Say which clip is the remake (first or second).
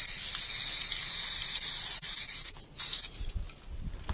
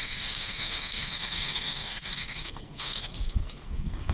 second